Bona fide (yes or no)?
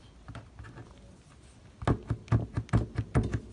yes